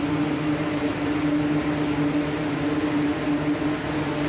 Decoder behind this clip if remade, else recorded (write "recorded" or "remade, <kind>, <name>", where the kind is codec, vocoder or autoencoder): recorded